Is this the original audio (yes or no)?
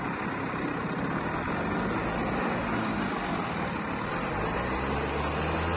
yes